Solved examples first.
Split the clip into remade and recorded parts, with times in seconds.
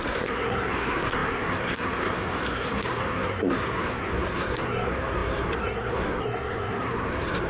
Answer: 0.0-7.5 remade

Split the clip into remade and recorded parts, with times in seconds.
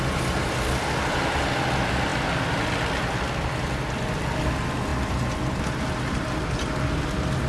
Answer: 0.0-7.5 recorded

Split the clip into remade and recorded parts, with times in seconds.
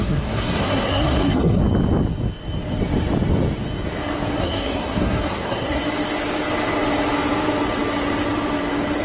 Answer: 0.0-1.6 remade; 1.6-4.4 recorded; 4.4-5.8 remade; 5.8-9.0 recorded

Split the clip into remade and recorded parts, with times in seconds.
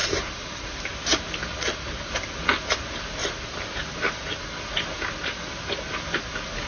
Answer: 0.0-1.3 remade; 1.3-3.2 recorded; 3.2-4.4 remade; 4.4-6.7 recorded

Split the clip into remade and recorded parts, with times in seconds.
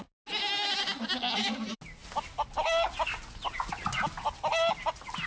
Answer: 0.0-5.3 recorded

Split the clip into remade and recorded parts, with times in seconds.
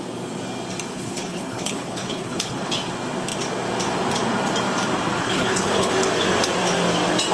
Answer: 0.0-0.9 recorded; 0.9-2.8 remade; 2.8-5.2 recorded; 5.2-5.9 remade; 5.9-7.3 recorded